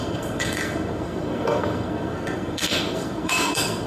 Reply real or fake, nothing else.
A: fake